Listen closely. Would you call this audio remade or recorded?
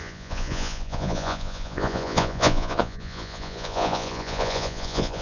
remade